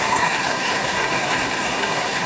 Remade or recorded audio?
remade